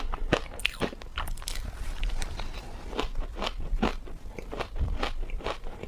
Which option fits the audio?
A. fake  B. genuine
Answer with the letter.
B